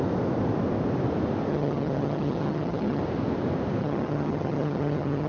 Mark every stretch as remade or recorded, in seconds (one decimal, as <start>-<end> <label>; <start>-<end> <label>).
0.0-1.5 recorded; 1.5-3.0 remade; 3.0-3.8 recorded; 3.8-5.3 remade